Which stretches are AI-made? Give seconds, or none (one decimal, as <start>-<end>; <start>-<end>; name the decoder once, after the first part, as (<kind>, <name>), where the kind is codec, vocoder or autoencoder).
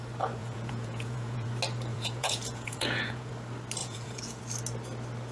0.4-1.5 (vocoder, Vocos); 1.9-3.3; 3.8-4.4